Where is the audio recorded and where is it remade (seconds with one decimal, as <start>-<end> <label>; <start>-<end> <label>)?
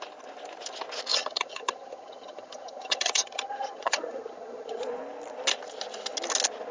0.0-1.1 recorded; 1.1-4.8 remade; 4.8-6.7 recorded